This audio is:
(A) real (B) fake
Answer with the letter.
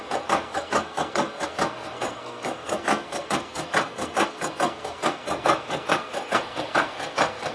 B